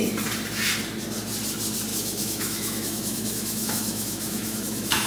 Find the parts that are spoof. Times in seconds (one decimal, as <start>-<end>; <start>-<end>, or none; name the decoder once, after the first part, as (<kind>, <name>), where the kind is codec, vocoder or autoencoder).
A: 1.9-5.1 (autoencoder, DAC-VAE)